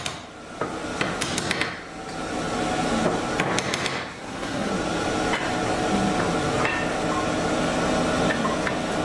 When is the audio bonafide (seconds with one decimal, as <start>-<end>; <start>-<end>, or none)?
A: 0.0-4.1; 4.7-9.0